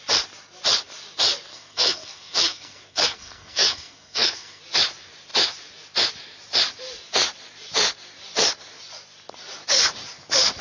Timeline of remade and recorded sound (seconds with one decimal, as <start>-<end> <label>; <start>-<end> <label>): 0.0-1.5 recorded; 1.5-4.6 remade; 4.6-10.6 recorded